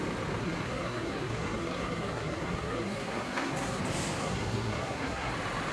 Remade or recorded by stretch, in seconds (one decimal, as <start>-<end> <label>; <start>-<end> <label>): 0.0-0.4 recorded; 0.4-3.8 remade; 3.8-4.2 recorded; 4.2-5.3 remade; 5.3-5.7 recorded